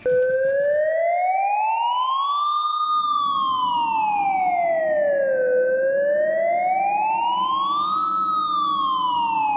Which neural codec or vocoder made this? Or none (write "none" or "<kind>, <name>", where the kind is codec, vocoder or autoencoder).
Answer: none